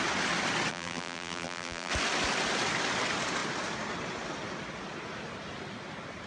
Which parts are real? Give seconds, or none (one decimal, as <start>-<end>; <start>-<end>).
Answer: 0.0-0.7; 1.9-6.3